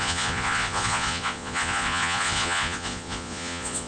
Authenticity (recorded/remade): remade